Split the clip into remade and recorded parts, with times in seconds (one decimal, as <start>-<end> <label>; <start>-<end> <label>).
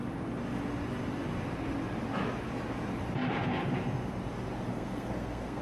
0.0-4.7 recorded; 4.7-5.6 remade